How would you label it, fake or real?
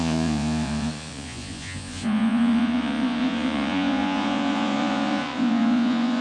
fake